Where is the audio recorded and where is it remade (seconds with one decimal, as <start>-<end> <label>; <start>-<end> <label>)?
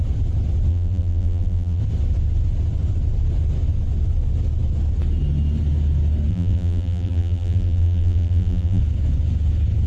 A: 0.0-0.7 recorded; 0.7-1.8 remade; 1.8-6.3 recorded; 6.3-8.8 remade; 8.8-9.9 recorded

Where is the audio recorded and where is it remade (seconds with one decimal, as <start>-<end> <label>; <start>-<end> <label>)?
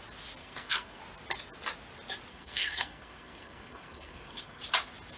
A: 0.0-0.4 recorded; 0.4-1.0 remade; 1.0-2.3 recorded; 2.3-4.6 remade; 4.6-5.2 recorded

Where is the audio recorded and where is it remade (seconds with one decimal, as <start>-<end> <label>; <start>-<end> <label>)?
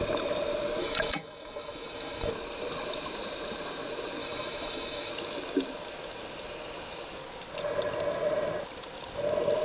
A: 0.0-0.8 recorded; 0.8-2.3 remade; 2.3-4.2 recorded; 4.2-5.1 remade; 5.1-9.6 recorded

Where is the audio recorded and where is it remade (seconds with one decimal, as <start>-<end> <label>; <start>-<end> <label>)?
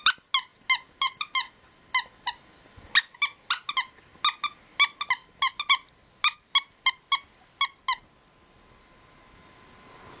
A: 0.0-10.2 recorded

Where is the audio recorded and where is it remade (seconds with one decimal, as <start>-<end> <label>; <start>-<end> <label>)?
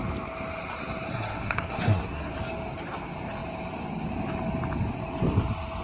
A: 0.0-1.1 recorded; 1.1-2.3 remade; 2.3-5.8 recorded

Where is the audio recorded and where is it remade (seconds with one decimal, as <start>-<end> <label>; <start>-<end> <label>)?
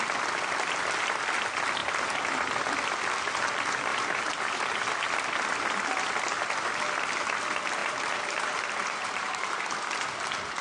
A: 0.0-3.9 recorded; 3.9-4.4 remade; 4.4-7.8 recorded; 7.8-9.7 remade; 9.7-10.6 recorded